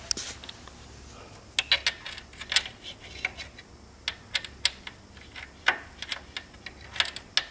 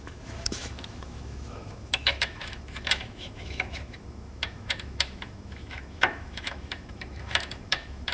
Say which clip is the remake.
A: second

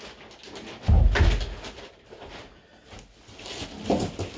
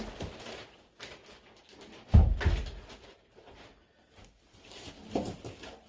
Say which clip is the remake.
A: second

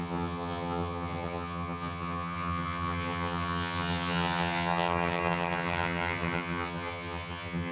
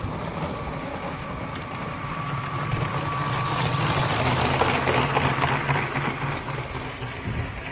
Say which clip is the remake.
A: first